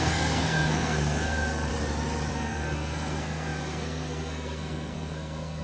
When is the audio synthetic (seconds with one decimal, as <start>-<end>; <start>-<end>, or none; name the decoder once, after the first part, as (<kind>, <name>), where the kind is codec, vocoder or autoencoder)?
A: 0.0-1.7 (codec, SNAC); 2.3-5.6